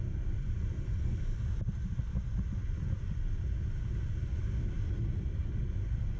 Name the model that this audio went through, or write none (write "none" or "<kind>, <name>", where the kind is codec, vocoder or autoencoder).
none